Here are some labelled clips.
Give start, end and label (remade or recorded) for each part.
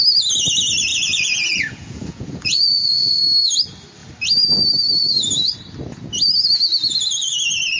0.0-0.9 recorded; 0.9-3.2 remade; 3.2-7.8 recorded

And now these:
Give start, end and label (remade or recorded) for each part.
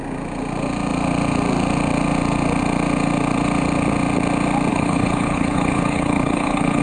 0.0-4.7 recorded; 4.7-6.8 remade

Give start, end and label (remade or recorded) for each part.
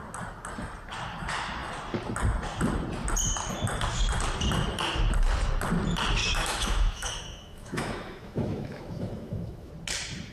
0.0-6.2 recorded; 6.2-9.7 remade; 9.7-10.3 recorded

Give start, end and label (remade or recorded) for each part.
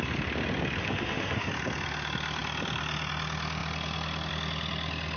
0.0-0.8 recorded; 0.8-1.5 remade; 1.5-5.2 recorded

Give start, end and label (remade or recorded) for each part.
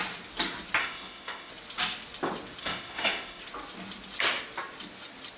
0.0-0.8 recorded; 0.8-1.5 remade; 1.5-2.6 recorded; 2.6-3.4 remade; 3.4-5.4 recorded